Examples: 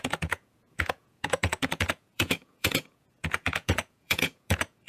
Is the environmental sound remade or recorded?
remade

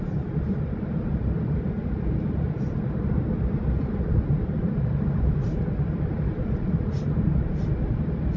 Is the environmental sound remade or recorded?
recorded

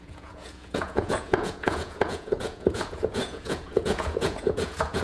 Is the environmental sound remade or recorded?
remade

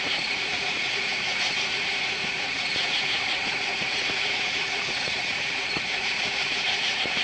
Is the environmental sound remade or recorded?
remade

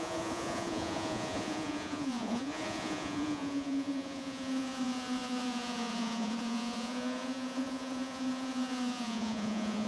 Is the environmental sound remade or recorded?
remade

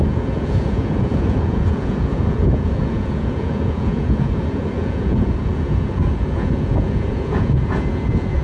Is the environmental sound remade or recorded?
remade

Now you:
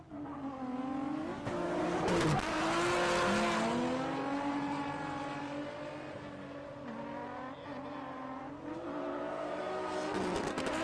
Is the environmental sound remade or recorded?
recorded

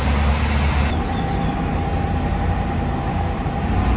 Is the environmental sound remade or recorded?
recorded